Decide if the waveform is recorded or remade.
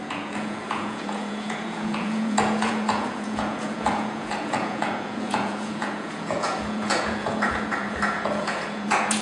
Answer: remade